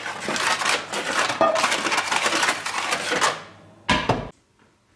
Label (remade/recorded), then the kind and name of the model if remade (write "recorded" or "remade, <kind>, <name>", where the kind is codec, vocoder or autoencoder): recorded